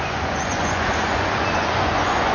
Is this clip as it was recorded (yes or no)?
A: no